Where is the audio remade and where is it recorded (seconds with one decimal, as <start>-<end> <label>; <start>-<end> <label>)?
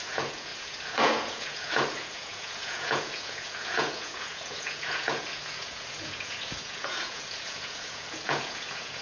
0.0-9.0 remade